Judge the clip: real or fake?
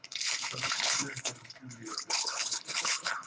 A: fake